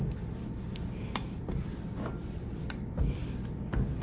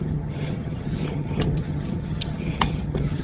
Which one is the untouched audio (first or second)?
first